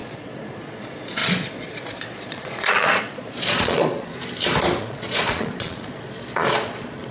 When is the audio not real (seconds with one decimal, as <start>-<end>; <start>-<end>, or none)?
0.0-4.1; 4.8-7.1